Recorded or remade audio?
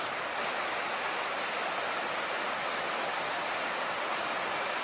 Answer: recorded